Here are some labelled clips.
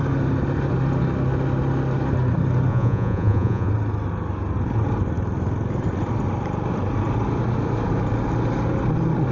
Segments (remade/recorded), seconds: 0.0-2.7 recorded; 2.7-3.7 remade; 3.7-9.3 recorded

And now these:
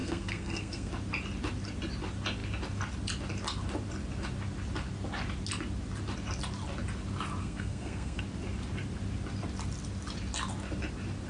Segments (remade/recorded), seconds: 0.0-0.9 remade; 0.9-7.4 recorded; 7.4-8.2 remade; 8.2-11.3 recorded

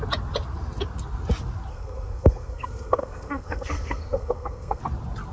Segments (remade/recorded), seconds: 0.0-1.7 recorded; 1.7-4.8 remade; 4.8-5.3 recorded

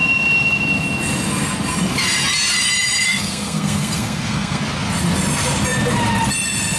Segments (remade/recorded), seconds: 0.0-3.1 recorded; 3.1-4.6 remade; 4.6-6.8 recorded

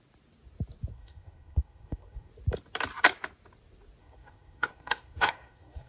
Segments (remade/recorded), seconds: 0.0-0.9 recorded; 0.9-2.3 remade; 2.3-4.0 recorded; 4.0-5.9 remade

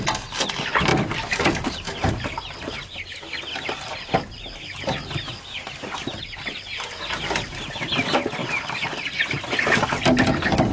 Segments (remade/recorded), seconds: 0.0-0.9 recorded; 0.9-1.7 remade; 1.7-3.5 recorded; 3.5-6.2 remade; 6.2-8.4 recorded; 8.4-10.0 remade; 10.0-10.7 recorded